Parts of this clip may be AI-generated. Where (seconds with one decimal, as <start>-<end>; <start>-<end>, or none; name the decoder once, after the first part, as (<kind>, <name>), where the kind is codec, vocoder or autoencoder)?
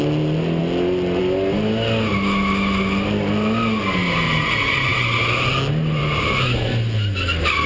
none